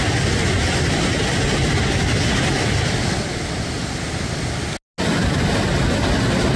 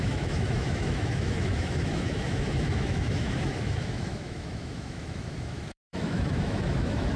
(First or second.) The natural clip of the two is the first